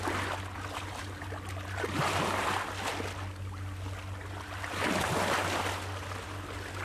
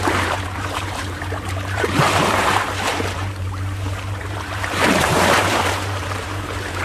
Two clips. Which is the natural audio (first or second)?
first